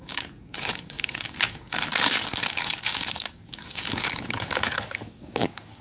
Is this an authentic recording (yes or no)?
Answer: no